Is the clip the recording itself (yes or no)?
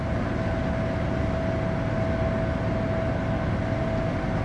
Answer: yes